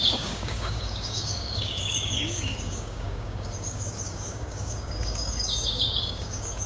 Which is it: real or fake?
fake